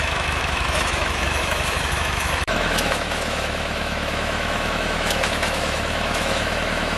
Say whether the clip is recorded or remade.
remade